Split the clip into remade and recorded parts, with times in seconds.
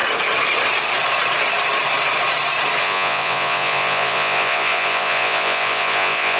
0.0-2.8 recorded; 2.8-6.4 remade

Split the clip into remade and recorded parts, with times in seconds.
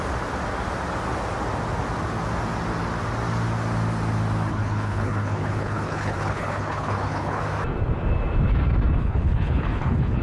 0.0-4.5 recorded; 4.5-7.4 remade; 7.4-9.0 recorded; 9.0-10.2 remade